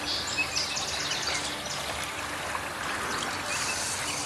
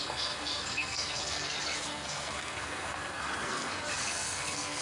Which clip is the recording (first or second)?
first